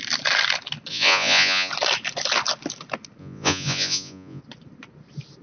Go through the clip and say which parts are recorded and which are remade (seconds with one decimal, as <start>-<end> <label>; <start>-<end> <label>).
0.0-0.9 recorded; 0.9-1.7 remade; 1.7-3.2 recorded; 3.2-4.4 remade; 4.4-5.4 recorded